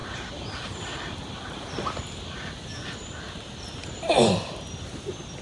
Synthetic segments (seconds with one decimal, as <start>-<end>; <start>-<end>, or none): none